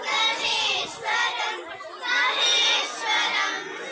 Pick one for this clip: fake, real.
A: real